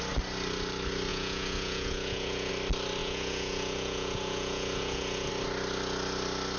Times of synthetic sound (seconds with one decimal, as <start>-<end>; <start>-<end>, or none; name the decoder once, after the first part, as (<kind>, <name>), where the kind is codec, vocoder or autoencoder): 1.1-2.5 (vocoder, Vocos); 3.0-5.3